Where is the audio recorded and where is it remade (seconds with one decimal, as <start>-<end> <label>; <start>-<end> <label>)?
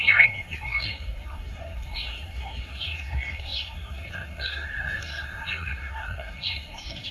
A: 0.0-7.1 remade